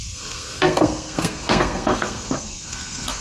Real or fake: fake